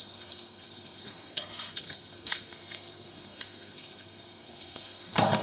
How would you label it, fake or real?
fake